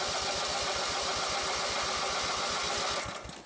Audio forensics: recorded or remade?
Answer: recorded